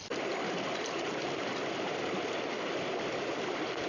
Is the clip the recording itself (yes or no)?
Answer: yes